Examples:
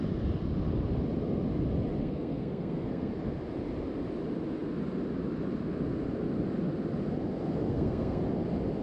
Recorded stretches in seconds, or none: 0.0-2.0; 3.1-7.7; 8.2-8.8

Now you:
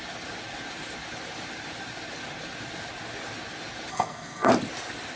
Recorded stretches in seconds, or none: 0.0-3.9; 4.5-5.2

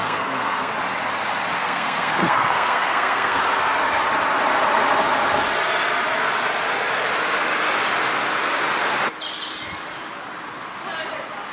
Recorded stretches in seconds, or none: 0.7-1.6; 3.4-11.5

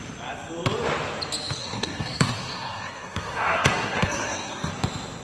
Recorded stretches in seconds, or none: 0.0-1.6; 4.7-5.2

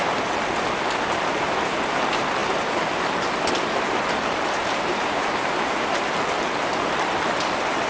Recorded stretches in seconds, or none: 0.0-7.9